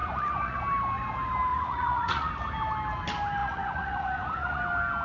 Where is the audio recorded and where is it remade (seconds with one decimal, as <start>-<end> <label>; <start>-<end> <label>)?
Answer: 0.0-0.6 remade; 0.6-1.5 recorded; 1.5-2.3 remade; 2.3-3.4 recorded; 3.4-4.6 remade; 4.6-5.0 recorded